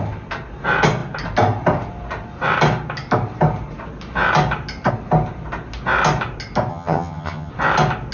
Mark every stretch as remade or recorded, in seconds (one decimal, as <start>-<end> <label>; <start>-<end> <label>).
0.0-6.7 recorded; 6.7-7.5 remade; 7.5-8.1 recorded